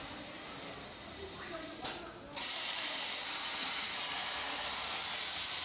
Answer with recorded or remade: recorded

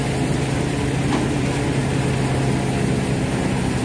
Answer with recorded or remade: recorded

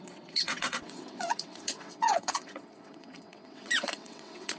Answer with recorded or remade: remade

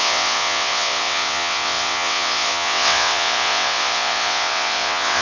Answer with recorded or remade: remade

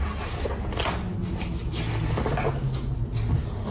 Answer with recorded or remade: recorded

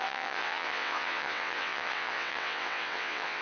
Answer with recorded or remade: remade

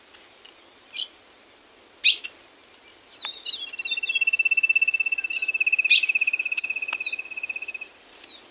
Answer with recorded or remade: recorded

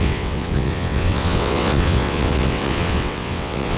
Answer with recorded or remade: remade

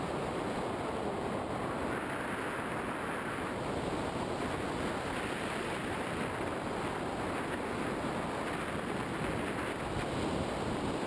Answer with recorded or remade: recorded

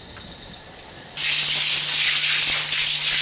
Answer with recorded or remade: recorded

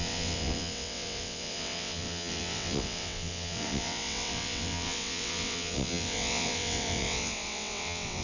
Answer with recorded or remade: remade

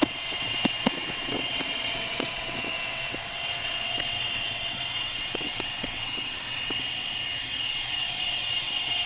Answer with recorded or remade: remade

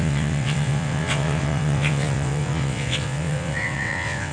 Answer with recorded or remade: remade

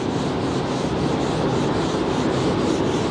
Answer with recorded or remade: recorded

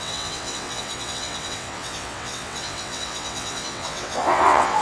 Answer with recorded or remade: remade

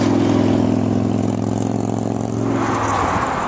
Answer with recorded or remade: recorded